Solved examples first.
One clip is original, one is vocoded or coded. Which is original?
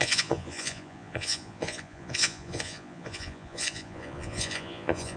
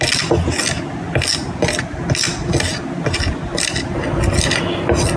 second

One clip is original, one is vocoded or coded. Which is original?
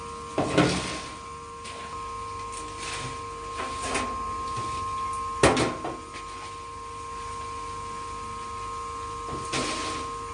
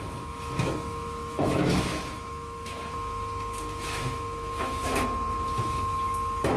first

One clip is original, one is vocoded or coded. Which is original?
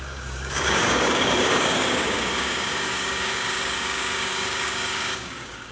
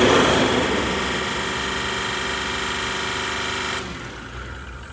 second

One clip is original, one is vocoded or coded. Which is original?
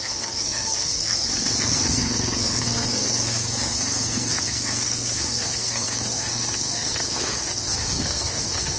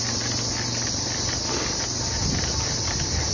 second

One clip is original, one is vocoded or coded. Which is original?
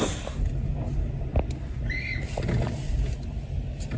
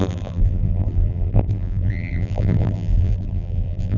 first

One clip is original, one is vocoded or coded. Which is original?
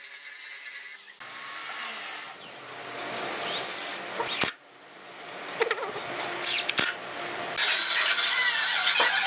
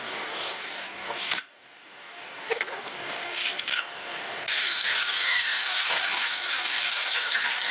first